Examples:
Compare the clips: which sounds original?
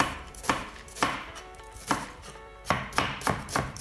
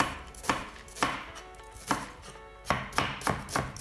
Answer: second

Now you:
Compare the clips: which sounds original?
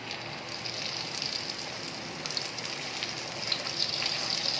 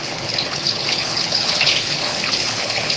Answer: first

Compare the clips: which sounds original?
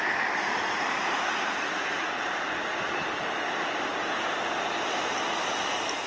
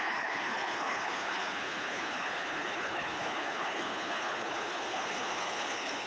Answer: first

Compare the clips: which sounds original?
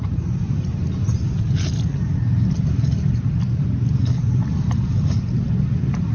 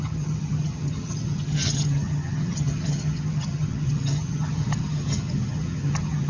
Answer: first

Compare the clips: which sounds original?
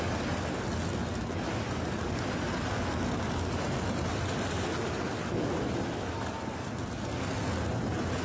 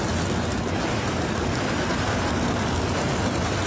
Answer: first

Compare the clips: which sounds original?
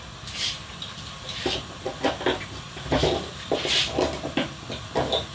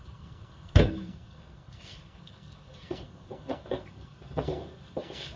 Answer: first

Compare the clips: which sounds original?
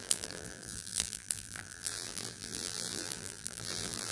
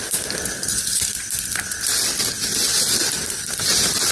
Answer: second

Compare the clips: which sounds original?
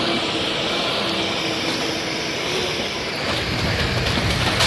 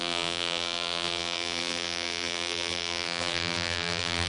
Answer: first